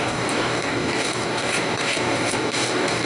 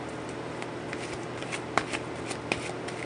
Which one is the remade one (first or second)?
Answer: first